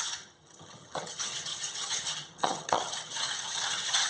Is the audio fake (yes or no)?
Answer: yes